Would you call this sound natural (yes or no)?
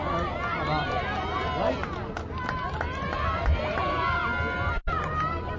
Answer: yes